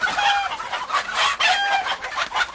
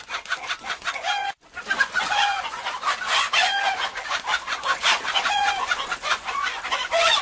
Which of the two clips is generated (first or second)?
second